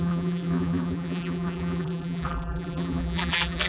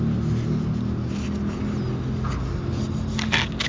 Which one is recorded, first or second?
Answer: second